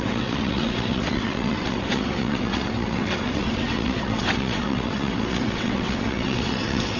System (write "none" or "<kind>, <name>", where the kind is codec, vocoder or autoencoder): vocoder, WaveNeXt